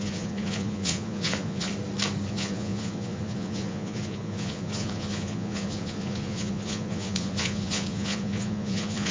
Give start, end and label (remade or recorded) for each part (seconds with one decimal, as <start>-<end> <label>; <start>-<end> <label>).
0.0-1.7 remade; 1.7-2.3 recorded; 2.3-9.1 remade